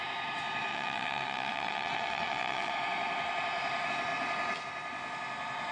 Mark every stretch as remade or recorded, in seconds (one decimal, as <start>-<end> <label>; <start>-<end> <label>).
0.0-0.7 recorded; 0.7-2.7 remade; 2.7-5.7 recorded